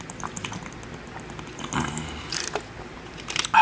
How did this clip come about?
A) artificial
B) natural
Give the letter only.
B